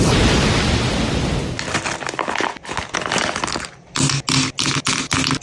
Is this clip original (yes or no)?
yes